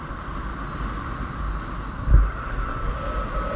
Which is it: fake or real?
real